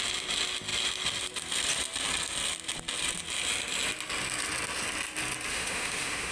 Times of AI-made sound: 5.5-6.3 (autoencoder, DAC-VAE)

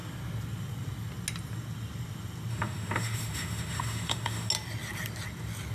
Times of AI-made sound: 2.5-4.5 (autoencoder, DAC-VAE)

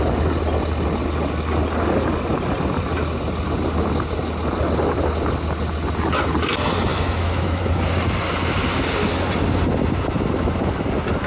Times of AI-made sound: 6.9-7.6 (autoencoder, DAC-VAE)

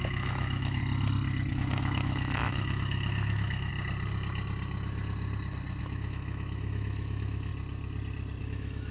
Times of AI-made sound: 0.0-0.8 (autoencoder, DAC-VAE); 1.5-3.7; 5.8-7.5; 8.4-8.9